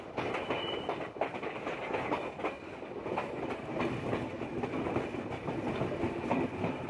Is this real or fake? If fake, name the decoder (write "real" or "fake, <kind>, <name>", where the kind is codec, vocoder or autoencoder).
real